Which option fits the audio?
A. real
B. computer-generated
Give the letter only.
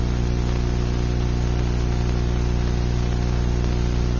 A